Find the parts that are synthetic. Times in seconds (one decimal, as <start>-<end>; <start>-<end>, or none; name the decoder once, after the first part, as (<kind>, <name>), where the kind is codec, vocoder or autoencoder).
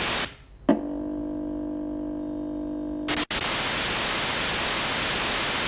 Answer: none